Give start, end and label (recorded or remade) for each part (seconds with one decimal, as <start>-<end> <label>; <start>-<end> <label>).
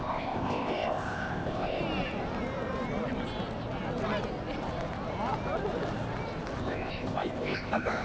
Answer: 0.0-1.8 remade; 1.8-6.6 recorded; 6.6-8.0 remade